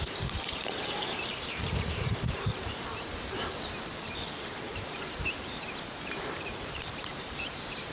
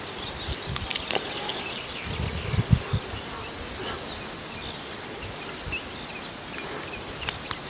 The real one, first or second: second